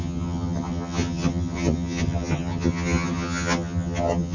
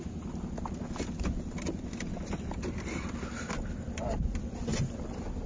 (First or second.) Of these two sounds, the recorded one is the second